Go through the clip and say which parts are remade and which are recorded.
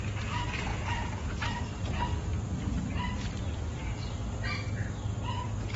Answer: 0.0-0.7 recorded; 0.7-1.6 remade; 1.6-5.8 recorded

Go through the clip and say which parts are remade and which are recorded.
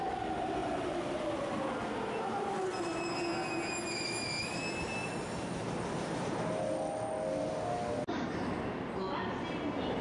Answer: 0.0-0.6 recorded; 0.6-1.7 remade; 1.7-5.0 recorded; 5.0-6.4 remade; 6.4-10.0 recorded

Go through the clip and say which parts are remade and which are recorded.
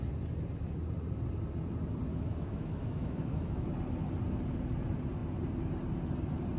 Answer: 0.0-2.1 recorded; 2.1-3.7 remade; 3.7-6.6 recorded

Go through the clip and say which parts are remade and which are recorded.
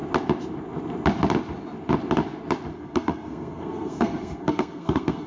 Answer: 0.0-2.7 recorded; 2.7-5.3 remade